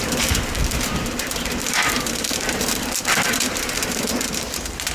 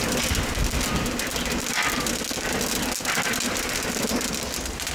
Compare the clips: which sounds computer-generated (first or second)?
first